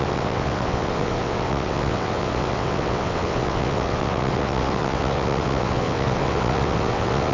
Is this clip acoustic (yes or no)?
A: no